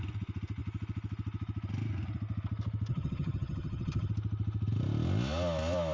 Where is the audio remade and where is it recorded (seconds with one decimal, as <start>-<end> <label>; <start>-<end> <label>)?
0.0-2.9 recorded; 2.9-4.1 remade; 4.1-5.9 recorded